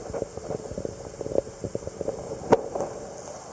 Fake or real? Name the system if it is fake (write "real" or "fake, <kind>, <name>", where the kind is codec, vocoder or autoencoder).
real